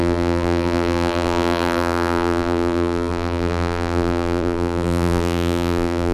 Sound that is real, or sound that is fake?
fake